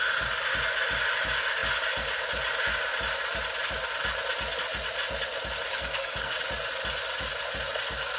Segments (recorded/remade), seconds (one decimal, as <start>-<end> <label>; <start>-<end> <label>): 0.0-5.7 recorded; 5.7-6.3 remade; 6.3-8.2 recorded